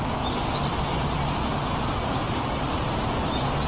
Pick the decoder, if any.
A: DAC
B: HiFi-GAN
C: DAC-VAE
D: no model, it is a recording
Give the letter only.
D